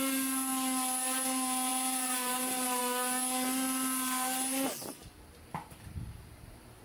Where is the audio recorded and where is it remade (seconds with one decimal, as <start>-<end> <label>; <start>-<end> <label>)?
0.0-1.7 recorded; 1.7-2.8 remade; 2.8-4.9 recorded; 4.9-6.8 remade